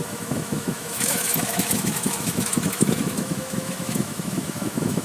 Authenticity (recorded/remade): remade